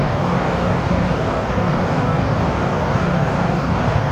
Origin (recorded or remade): remade